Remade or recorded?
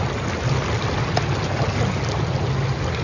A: recorded